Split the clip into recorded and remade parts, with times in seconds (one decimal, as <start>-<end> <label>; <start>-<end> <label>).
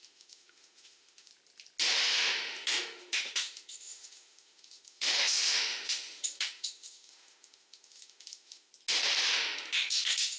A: 0.0-1.3 remade; 1.3-1.9 recorded; 1.9-8.7 remade; 8.7-9.2 recorded; 9.2-10.4 remade